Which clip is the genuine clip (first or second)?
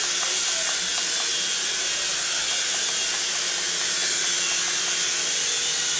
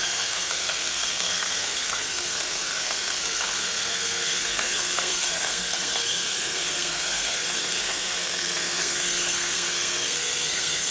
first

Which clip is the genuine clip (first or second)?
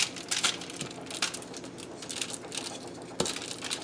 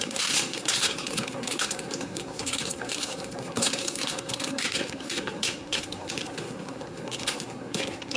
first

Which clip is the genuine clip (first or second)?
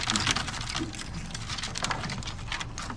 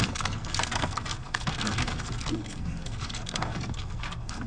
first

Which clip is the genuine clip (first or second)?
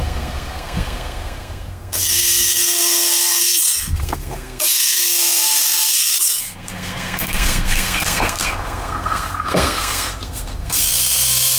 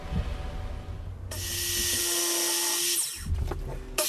second